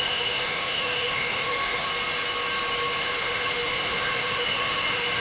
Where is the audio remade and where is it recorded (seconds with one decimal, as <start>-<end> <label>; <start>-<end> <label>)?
0.0-1.9 remade; 1.9-3.0 recorded; 3.0-5.2 remade